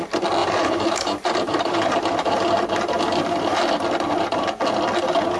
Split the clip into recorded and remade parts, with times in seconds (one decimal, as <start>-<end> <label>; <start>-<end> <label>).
0.0-0.4 recorded; 0.4-3.0 remade; 3.0-5.4 recorded

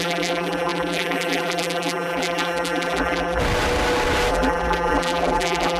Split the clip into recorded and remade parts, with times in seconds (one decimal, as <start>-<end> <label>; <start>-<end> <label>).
0.0-3.4 remade; 3.4-4.3 recorded; 4.3-5.8 remade